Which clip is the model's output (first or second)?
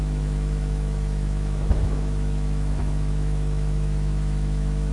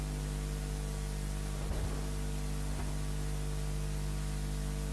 first